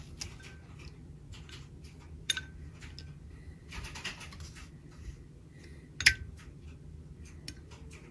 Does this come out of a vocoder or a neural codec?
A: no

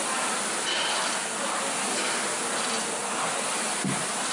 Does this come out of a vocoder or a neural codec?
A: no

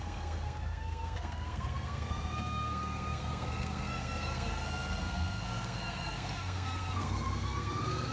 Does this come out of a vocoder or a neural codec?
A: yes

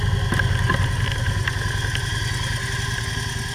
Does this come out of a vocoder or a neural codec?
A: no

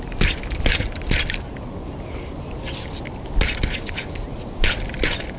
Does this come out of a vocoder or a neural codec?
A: no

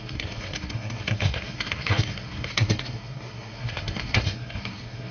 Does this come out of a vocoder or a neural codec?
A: yes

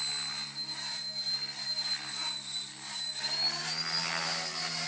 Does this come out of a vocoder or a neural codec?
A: no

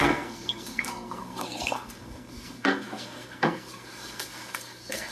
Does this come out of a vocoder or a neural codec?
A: yes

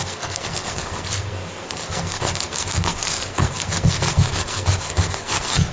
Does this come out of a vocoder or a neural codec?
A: yes